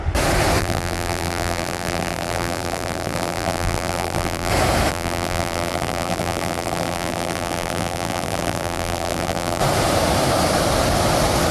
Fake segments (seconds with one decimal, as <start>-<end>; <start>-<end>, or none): 0.6-4.5; 4.9-9.6